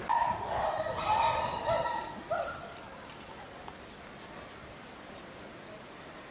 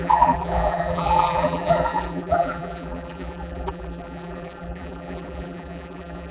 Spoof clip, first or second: second